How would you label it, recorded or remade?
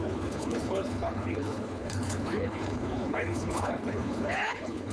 remade